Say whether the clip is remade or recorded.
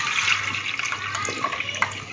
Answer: recorded